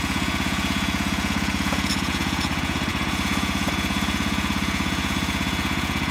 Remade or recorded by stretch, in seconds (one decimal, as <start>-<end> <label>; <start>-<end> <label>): 0.0-6.1 remade